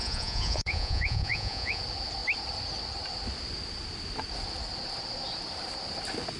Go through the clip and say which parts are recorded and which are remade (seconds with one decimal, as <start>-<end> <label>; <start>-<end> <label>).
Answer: 0.0-1.8 remade; 1.8-6.4 recorded